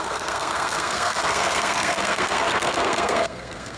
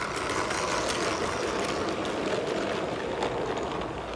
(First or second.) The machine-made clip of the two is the first